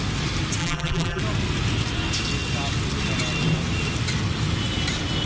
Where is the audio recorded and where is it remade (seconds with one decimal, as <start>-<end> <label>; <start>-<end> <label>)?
0.0-0.6 recorded; 0.6-1.2 remade; 1.2-5.3 recorded